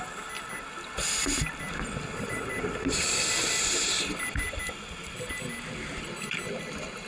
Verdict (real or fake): real